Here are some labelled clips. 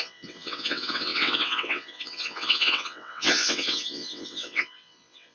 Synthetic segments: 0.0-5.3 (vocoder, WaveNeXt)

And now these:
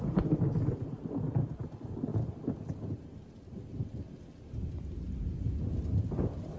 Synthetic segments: none